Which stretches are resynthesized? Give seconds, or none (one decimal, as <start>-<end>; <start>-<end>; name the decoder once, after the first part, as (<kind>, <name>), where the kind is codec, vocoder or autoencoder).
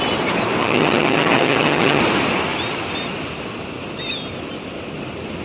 0.6-2.0 (vocoder, HiFi-GAN)